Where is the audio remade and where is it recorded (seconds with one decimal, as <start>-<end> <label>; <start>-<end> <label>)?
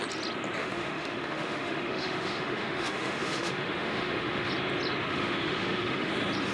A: 0.0-0.6 recorded; 0.6-4.5 remade; 4.5-5.1 recorded; 5.1-6.1 remade; 6.1-6.5 recorded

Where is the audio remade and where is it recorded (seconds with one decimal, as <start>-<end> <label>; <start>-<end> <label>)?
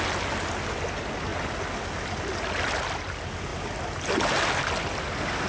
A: 0.0-5.5 recorded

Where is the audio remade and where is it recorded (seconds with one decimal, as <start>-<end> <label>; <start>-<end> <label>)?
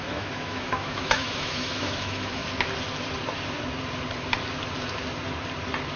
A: 0.0-2.4 remade; 2.4-6.0 recorded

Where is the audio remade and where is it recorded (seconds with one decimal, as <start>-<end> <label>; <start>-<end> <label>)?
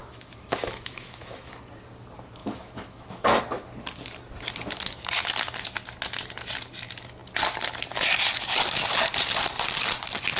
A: 0.0-1.5 remade; 1.5-2.4 recorded; 2.4-3.4 remade; 3.4-10.4 recorded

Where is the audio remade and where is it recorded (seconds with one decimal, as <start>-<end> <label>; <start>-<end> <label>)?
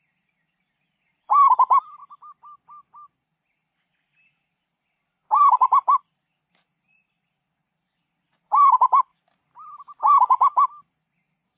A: 0.0-11.6 recorded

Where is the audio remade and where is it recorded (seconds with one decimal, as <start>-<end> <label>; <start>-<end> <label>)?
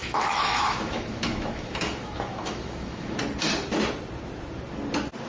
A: 0.0-3.2 remade; 3.2-5.3 recorded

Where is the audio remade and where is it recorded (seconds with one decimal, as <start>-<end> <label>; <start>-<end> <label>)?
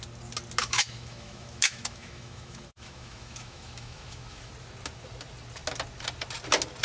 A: 0.0-0.6 recorded; 0.6-4.5 remade; 4.5-6.8 recorded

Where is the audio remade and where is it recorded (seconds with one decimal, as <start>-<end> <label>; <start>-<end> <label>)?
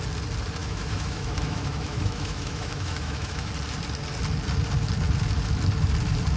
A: 0.0-0.6 recorded; 0.6-3.5 remade; 3.5-6.4 recorded